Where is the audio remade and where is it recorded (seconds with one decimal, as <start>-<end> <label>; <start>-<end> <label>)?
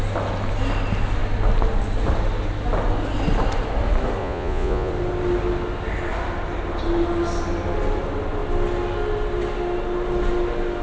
0.0-4.2 recorded; 4.2-4.9 remade; 4.9-10.8 recorded